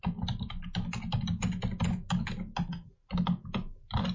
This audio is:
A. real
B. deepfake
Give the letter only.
A